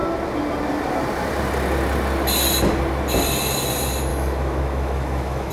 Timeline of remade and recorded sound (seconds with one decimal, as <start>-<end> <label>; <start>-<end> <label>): 0.0-4.1 recorded; 4.1-5.5 remade